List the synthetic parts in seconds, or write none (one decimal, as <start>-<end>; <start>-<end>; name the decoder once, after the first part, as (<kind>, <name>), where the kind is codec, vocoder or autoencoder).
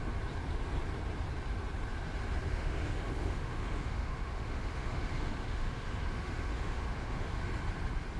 2.5-7.4 (autoencoder, DAC-VAE)